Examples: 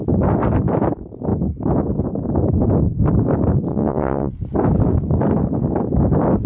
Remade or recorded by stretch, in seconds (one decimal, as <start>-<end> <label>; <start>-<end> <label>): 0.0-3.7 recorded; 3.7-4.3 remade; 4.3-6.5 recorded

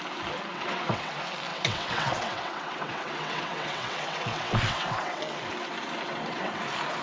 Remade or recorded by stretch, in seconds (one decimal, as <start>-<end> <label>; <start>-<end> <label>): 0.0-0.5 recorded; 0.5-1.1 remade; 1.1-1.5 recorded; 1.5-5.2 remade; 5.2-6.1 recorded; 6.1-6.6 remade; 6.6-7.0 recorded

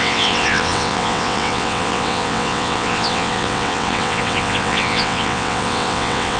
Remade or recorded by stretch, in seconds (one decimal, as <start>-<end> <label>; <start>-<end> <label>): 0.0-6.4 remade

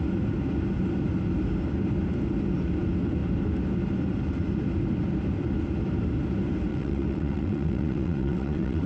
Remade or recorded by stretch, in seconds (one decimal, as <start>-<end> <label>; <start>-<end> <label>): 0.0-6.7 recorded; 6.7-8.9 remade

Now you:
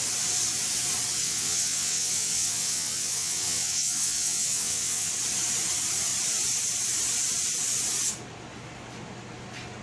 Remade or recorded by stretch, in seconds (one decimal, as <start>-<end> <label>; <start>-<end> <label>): 0.0-1.2 recorded; 1.2-5.1 remade; 5.1-9.8 recorded

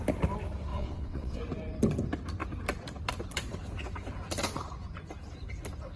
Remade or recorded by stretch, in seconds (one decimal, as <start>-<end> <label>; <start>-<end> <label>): 0.0-0.7 recorded; 0.7-1.4 remade; 1.4-6.0 recorded